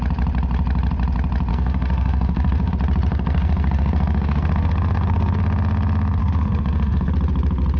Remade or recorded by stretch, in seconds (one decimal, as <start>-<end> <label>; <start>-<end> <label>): 0.0-1.5 recorded; 1.5-2.7 remade; 2.7-3.1 recorded; 3.1-5.4 remade; 5.4-6.2 recorded; 6.2-7.1 remade; 7.1-7.8 recorded